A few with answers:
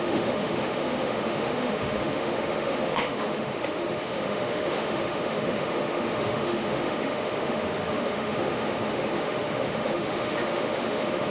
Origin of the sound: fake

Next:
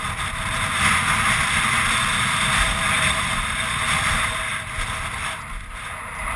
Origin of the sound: real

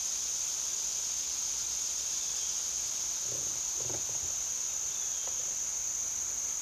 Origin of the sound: real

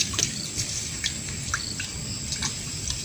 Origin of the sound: real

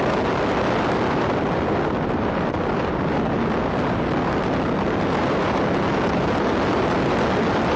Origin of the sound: real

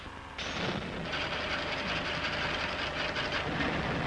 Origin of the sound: real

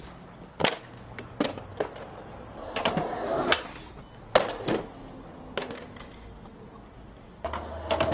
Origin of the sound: real